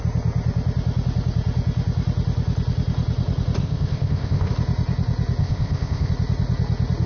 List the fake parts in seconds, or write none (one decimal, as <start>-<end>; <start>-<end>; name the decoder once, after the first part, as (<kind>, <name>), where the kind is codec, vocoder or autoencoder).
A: 3.6-4.5 (codec, ZipCodec); 5.4-6.1